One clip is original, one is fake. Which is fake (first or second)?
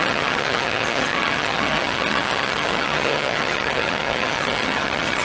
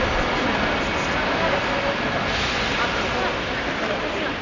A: first